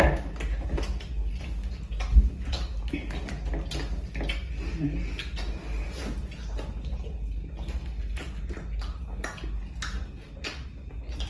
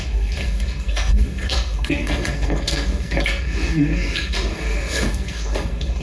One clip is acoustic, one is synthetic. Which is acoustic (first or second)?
first